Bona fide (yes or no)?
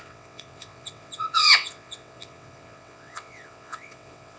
no